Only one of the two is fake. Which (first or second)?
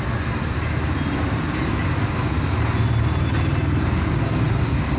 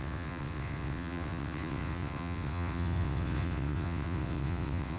second